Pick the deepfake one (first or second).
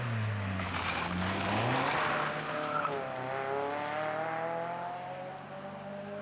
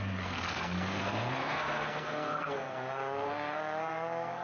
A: second